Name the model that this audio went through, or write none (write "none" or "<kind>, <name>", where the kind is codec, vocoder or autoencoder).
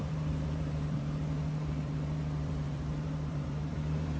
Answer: vocoder, BigVGAN v2